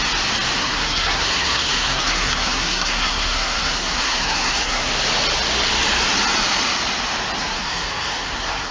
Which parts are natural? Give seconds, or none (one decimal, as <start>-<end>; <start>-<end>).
0.0-0.6; 4.9-7.4